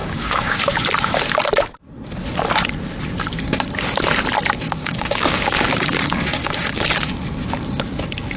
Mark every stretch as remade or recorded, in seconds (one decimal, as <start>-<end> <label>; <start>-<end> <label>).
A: 0.0-0.6 remade; 0.6-4.8 recorded; 4.8-7.1 remade; 7.1-8.4 recorded